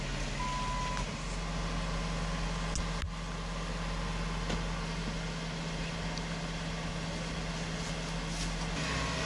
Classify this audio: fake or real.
real